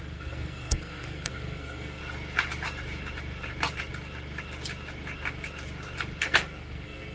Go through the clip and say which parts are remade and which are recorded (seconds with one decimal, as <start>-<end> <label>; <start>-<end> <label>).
0.0-2.0 remade; 2.0-6.2 recorded; 6.2-7.1 remade